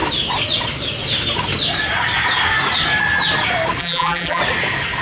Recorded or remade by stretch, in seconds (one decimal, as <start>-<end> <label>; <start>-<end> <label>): 0.0-3.8 recorded; 3.8-4.4 remade; 4.4-5.0 recorded